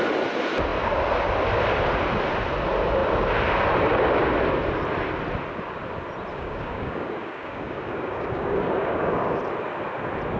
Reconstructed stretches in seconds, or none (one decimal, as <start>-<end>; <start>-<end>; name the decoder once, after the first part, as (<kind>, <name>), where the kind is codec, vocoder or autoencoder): 6.3-9.4 (codec, DAC)